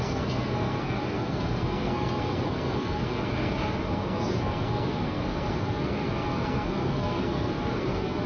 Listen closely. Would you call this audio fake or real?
fake